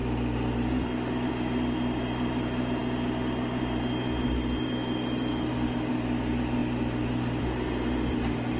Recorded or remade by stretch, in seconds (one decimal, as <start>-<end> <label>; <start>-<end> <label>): 0.0-8.6 recorded